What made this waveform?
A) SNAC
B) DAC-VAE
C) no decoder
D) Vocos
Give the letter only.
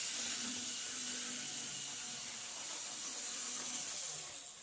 C